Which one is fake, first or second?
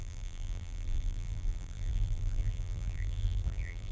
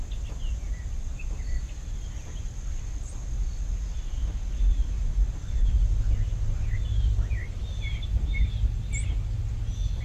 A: first